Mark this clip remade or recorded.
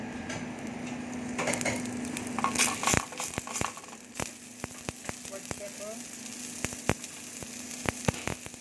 recorded